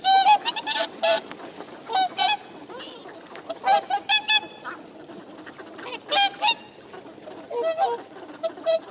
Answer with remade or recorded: recorded